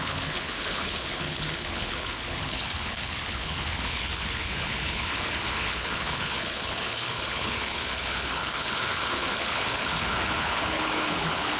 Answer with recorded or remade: remade